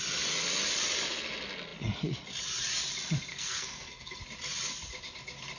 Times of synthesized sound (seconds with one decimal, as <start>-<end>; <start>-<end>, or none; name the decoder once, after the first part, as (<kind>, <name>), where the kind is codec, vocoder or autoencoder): 3.3-4.2 (codec, SNAC)